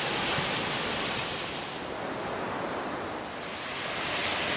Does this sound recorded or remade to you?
recorded